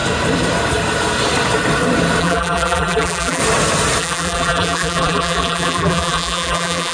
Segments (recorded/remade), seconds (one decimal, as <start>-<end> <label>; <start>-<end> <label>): 0.0-2.2 recorded; 2.2-3.4 remade; 3.4-4.0 recorded; 4.0-6.9 remade